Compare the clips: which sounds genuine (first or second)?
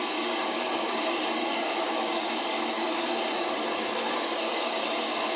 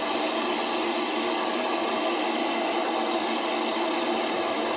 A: second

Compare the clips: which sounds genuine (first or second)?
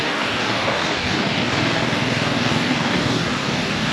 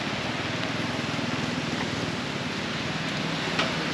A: second